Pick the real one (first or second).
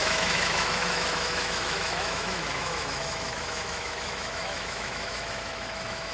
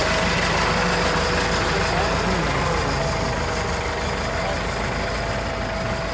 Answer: second